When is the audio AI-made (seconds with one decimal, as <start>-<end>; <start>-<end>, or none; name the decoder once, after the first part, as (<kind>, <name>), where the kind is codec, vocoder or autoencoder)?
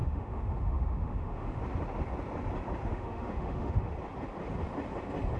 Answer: 0.0-1.6 (autoencoder, DAC-VAE); 2.9-3.9